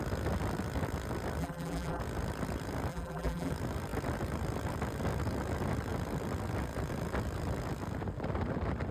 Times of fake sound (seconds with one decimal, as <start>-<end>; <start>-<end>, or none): 1.4-2.0; 2.9-3.5